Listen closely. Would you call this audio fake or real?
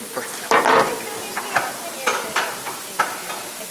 real